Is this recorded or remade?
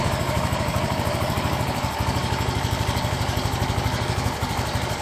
remade